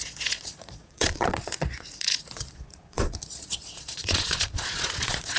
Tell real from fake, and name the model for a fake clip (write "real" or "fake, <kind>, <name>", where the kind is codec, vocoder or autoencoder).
fake, vocoder, Vocos